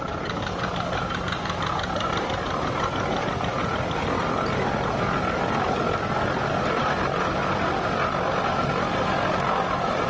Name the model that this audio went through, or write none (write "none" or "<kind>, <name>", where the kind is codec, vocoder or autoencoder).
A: none